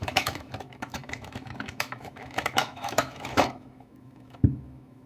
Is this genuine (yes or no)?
no